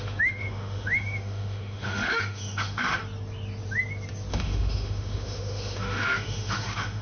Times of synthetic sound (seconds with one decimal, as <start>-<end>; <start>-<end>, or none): 0.0-3.0; 4.3-7.0